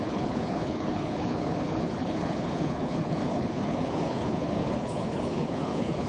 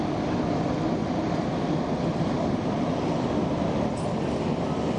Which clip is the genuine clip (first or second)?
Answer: second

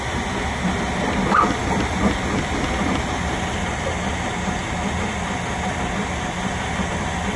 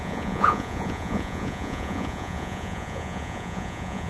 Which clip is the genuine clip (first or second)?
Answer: first